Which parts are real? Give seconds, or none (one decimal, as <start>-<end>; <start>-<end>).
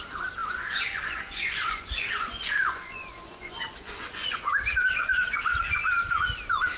0.0-0.4; 4.5-5.0; 5.8-6.8